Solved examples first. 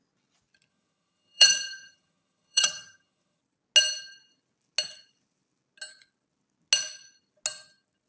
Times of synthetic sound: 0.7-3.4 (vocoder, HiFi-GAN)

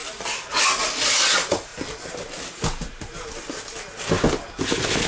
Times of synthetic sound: none